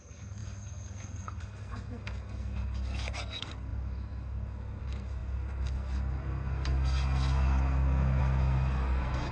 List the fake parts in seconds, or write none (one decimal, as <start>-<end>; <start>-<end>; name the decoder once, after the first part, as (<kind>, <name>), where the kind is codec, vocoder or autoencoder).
0.0-9.3 (codec, SNAC)